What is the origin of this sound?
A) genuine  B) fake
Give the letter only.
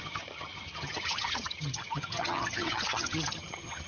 B